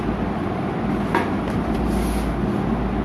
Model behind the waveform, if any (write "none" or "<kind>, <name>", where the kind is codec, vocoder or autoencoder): none